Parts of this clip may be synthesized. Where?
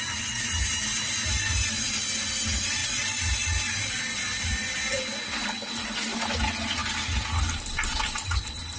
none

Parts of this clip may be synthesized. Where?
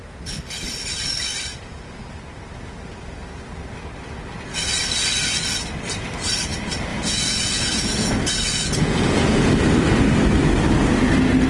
6.9-9.5 (vocoder, Vocos)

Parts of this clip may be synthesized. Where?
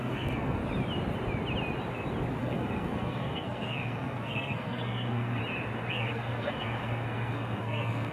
0.0-0.6 (codec, SNAC); 2.4-5.4; 5.9-8.1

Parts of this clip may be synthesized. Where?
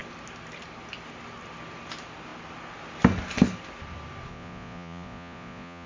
4.3-5.9 (vocoder, Vocos)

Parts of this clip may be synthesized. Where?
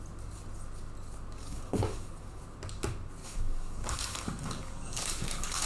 1.4-2.4 (codec, DAC); 3.2-5.7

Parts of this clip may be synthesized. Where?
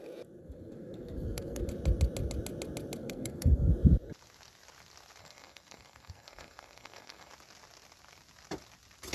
0.4-1.7 (codec, SNAC); 3.0-3.7; 5.2-7.3